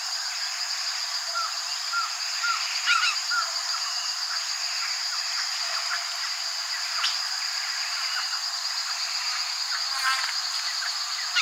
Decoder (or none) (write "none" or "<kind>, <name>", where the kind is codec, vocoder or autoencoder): none